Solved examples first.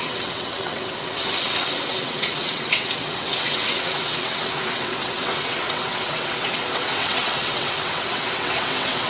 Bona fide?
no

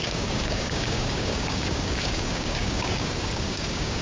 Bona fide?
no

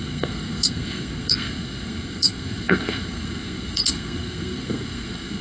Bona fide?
no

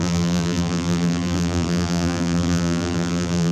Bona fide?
no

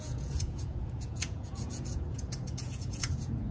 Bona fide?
no